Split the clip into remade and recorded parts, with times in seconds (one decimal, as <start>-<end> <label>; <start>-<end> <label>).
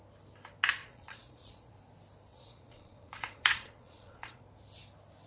0.0-0.8 recorded; 0.8-1.7 remade; 1.7-2.3 recorded; 2.3-4.4 remade; 4.4-5.3 recorded